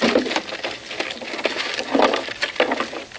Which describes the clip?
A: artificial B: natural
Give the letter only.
B